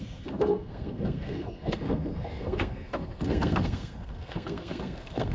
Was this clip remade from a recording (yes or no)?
yes